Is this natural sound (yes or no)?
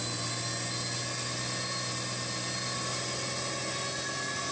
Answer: yes